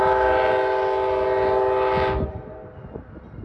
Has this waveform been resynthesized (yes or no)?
no